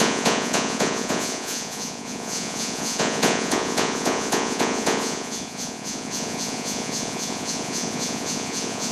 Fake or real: fake